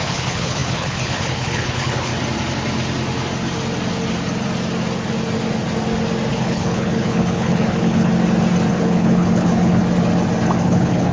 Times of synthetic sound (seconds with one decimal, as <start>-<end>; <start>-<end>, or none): 0.0-2.1; 6.3-8.1; 8.7-9.8; 10.6-11.1